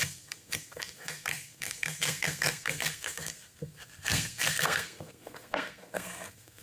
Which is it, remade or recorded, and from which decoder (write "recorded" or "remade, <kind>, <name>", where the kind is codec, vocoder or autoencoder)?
remade, codec, SNAC